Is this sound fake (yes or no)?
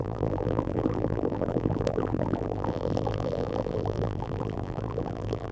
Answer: yes